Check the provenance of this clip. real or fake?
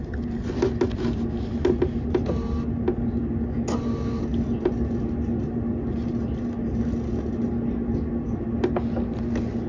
real